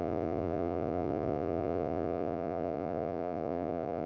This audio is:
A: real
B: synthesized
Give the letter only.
B